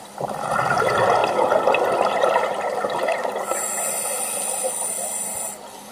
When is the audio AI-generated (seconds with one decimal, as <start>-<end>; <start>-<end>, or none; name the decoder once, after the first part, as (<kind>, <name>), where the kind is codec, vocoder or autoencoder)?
0.0-1.2 (vocoder, BigVGAN v2); 4.7-5.9